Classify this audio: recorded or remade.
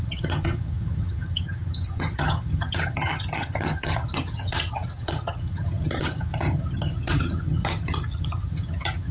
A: remade